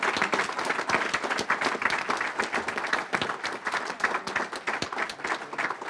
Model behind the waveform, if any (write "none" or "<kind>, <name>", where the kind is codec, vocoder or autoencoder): none